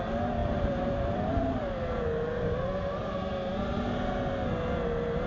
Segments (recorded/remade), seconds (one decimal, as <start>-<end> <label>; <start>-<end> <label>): 0.0-0.4 recorded; 0.4-1.7 remade; 1.7-3.0 recorded; 3.0-4.1 remade; 4.1-5.3 recorded